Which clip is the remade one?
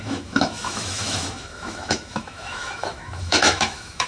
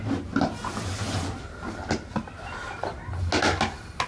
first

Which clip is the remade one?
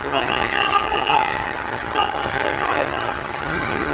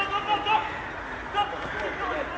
first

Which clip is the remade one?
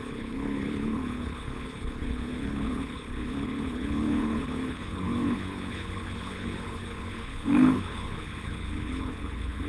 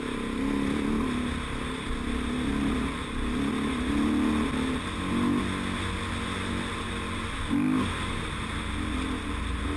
first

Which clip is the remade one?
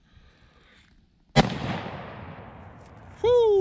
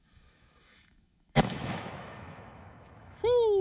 second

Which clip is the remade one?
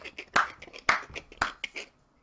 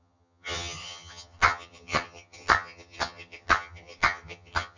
second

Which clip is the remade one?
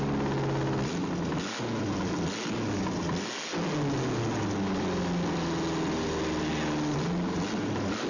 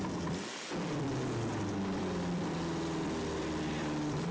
second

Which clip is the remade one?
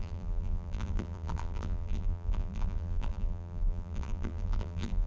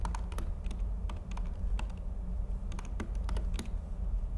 first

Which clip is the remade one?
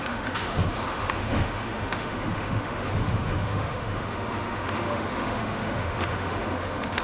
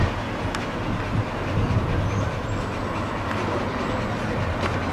first